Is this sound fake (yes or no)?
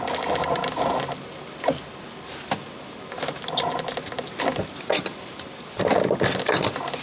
no